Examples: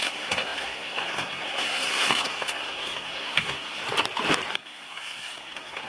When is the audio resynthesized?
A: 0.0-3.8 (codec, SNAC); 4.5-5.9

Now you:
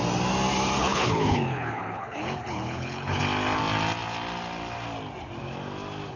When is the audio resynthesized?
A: 0.8-3.2 (codec, HILCodec)